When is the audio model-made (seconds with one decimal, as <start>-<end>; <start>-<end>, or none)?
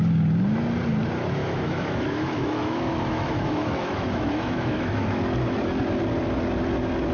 1.4-5.2